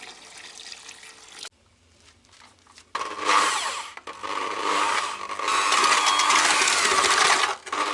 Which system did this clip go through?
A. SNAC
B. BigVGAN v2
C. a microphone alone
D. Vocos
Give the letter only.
C